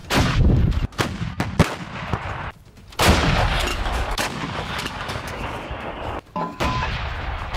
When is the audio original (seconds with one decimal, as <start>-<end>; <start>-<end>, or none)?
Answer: 0.0-3.7; 6.6-7.6